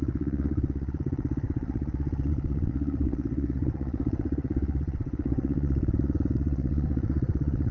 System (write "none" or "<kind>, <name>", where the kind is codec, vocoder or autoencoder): vocoder, WaveNeXt